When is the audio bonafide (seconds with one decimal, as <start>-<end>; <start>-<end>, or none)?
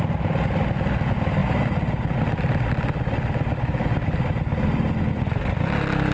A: 0.0-6.1